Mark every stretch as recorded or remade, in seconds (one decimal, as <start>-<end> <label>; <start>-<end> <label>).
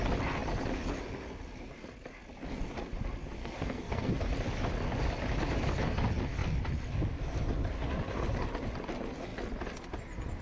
0.0-3.4 recorded; 3.4-4.1 remade; 4.1-10.4 recorded